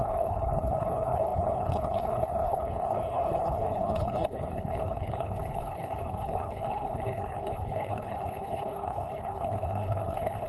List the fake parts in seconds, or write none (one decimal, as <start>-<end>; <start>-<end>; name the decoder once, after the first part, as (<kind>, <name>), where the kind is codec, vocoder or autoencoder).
0.0-10.5 (codec, HILCodec)